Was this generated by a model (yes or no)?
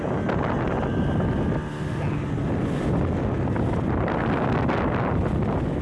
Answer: no